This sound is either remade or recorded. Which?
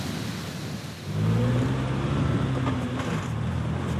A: recorded